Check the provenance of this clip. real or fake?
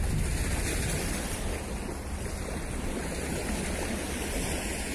real